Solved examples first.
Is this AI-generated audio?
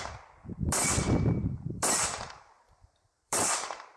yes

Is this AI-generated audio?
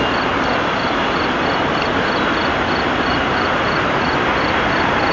no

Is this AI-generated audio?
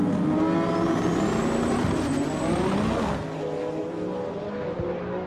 no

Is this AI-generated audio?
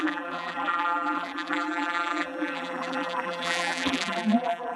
yes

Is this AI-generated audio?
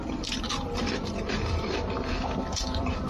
yes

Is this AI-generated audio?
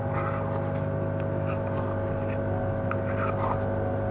no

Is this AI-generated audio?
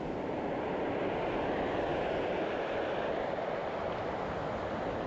no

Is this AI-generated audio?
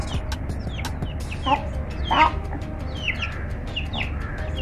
no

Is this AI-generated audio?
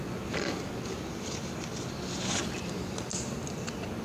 no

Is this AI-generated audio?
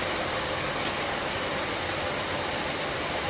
no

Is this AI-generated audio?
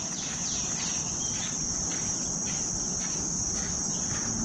no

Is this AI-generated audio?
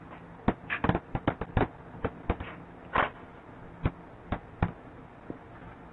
no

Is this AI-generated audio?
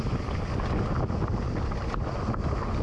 no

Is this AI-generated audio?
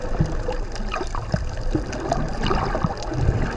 no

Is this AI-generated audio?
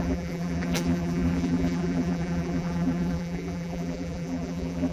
yes